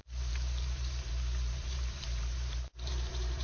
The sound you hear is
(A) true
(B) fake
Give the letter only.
B